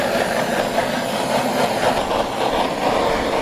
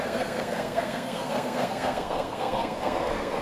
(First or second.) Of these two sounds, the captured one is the first